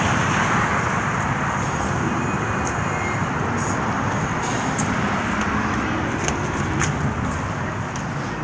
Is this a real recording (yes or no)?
yes